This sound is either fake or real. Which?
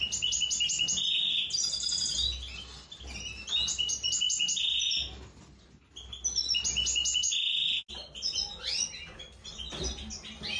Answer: real